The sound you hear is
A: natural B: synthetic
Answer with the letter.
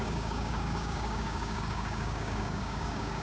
B